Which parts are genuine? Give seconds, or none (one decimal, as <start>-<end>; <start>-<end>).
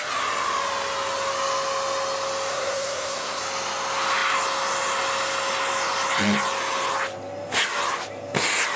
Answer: 0.0-2.5; 3.4-8.8